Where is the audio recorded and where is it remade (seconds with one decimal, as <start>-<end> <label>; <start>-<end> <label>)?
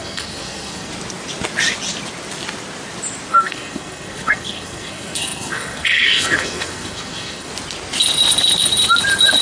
0.0-0.9 remade; 0.9-3.3 recorded; 3.3-7.5 remade; 7.5-9.4 recorded